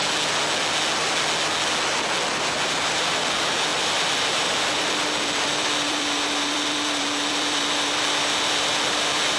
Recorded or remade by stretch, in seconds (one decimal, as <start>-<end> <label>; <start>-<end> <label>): 0.0-2.4 recorded; 2.4-9.4 remade